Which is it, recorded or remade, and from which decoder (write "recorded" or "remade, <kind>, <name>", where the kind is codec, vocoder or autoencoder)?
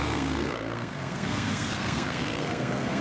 remade, codec, SNAC